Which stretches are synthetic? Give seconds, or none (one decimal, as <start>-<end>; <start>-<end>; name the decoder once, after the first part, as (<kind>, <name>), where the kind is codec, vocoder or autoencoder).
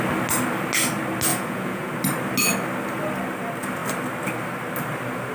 1.3-1.9 (vocoder, Vocos)